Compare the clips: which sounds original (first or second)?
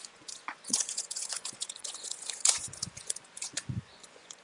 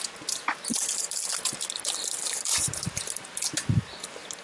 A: second